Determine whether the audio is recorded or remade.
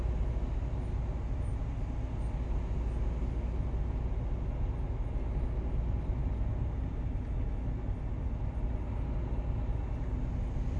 recorded